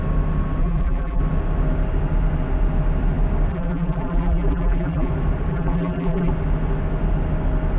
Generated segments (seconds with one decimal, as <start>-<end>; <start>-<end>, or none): 0.6-1.2; 3.5-5.1; 5.5-6.3